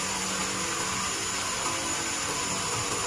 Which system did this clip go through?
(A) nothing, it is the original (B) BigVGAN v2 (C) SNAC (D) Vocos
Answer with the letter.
A